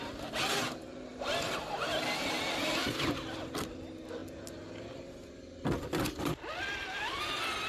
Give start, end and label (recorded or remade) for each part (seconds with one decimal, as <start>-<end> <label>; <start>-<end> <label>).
0.0-7.7 recorded